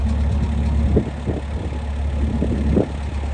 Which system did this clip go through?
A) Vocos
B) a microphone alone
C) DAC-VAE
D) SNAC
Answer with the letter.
B